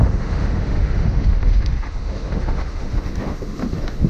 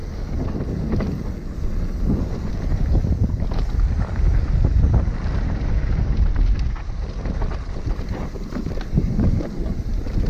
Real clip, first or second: second